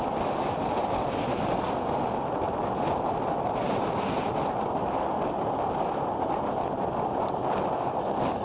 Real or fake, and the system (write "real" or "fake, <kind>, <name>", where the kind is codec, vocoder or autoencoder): real